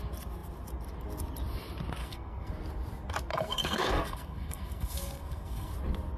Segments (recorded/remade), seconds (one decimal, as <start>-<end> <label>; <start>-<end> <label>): 0.0-2.0 recorded; 2.0-2.5 remade; 2.5-3.3 recorded; 3.3-5.7 remade; 5.7-6.2 recorded